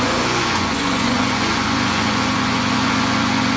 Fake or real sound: fake